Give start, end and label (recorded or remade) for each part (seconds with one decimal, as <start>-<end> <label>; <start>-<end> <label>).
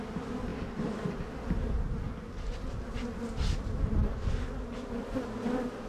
0.0-5.9 recorded